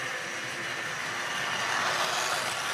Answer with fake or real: real